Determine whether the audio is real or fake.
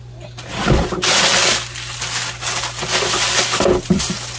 real